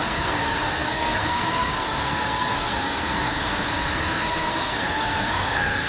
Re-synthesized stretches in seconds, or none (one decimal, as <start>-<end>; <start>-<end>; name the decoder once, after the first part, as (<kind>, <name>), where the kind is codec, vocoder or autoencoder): 0.0-5.9 (codec, SNAC)